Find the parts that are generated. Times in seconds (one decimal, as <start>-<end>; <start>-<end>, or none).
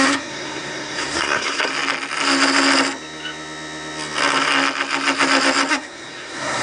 0.0-1.7; 5.7-6.6